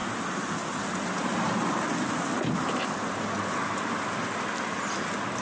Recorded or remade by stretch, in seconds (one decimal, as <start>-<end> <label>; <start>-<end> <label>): 0.0-5.4 recorded